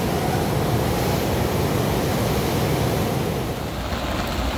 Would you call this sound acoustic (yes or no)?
yes